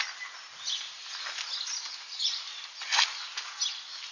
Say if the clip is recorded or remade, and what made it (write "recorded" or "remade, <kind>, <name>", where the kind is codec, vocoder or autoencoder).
recorded